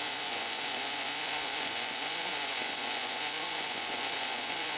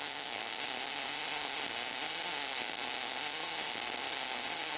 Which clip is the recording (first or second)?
second